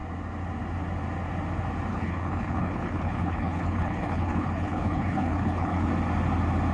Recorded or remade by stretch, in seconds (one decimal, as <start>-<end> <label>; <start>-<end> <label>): 0.0-1.9 recorded; 1.9-5.9 remade; 5.9-6.7 recorded